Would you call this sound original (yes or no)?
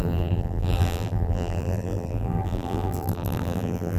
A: no